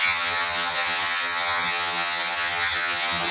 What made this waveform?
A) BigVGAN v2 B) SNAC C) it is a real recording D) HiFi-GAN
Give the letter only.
D